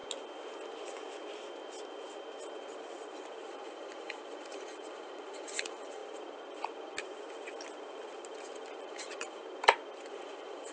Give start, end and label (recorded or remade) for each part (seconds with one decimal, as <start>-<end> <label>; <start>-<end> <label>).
0.0-3.5 recorded; 3.5-6.0 remade; 6.0-8.8 recorded; 8.8-9.4 remade; 9.4-10.1 recorded; 10.1-10.7 remade